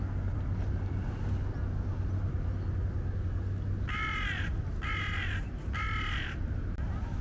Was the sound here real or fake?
real